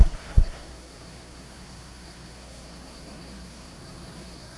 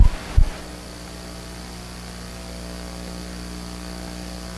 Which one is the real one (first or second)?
second